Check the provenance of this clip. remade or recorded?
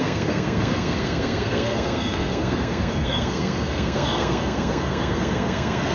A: remade